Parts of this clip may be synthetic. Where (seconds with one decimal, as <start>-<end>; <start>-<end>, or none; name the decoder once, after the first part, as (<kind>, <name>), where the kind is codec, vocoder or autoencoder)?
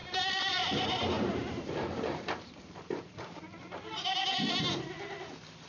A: 0.0-3.4 (vocoder, BigVGAN v2)